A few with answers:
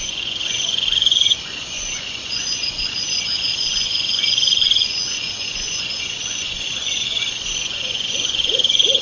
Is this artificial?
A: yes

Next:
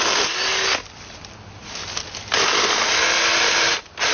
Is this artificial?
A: no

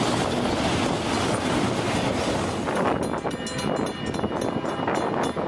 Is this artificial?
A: no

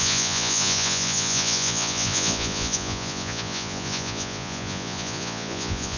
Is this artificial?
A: yes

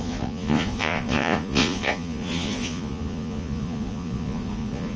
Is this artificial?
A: yes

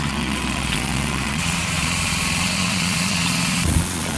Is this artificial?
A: yes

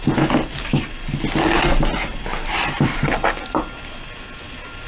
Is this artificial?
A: no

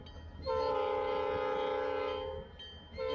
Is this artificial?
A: no